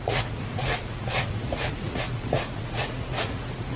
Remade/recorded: remade